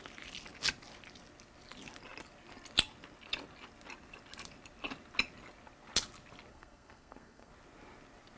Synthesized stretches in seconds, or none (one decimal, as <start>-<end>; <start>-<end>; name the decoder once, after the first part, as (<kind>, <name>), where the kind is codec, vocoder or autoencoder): 6.5-7.5 (codec, SNAC)